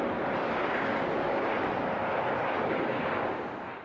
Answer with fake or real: real